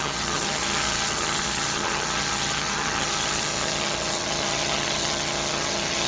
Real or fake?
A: fake